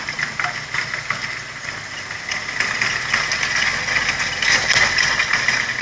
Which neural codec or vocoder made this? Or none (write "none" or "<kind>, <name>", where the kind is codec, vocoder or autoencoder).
none